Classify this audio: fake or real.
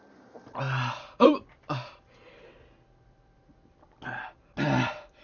real